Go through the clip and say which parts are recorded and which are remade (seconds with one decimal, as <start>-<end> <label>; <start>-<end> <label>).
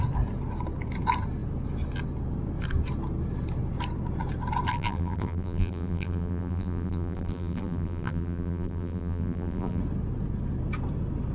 0.0-4.7 recorded; 4.7-9.8 remade; 9.8-11.3 recorded